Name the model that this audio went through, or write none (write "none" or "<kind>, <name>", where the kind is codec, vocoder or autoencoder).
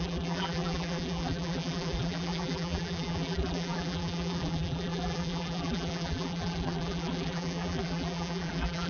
vocoder, BigVGAN v2